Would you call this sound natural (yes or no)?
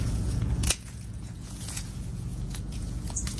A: no